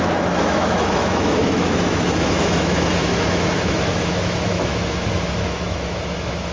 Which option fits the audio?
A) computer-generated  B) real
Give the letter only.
A